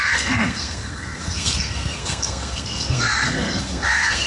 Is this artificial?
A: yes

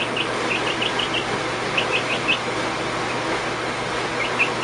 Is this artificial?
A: no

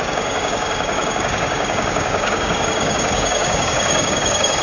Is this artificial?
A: yes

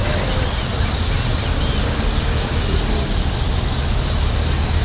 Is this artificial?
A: no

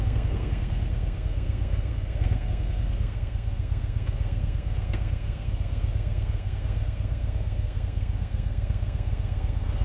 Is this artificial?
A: yes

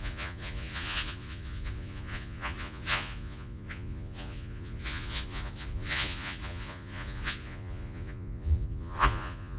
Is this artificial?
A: yes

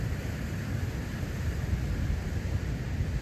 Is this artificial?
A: no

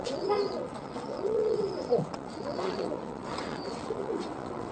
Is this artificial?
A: yes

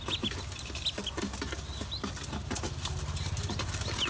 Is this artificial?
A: no